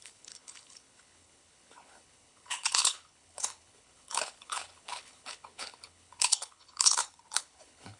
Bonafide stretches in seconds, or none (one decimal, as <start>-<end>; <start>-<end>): none